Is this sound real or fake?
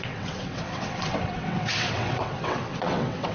fake